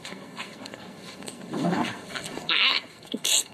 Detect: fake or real fake